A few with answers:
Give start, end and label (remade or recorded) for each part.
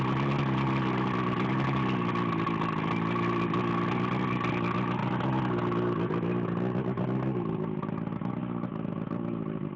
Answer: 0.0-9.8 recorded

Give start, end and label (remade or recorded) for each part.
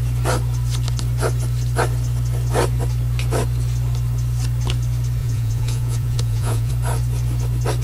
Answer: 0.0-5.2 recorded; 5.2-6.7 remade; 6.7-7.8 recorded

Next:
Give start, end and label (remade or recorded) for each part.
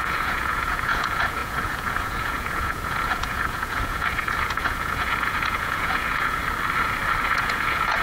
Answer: 0.0-6.4 remade; 6.4-7.2 recorded; 7.2-8.0 remade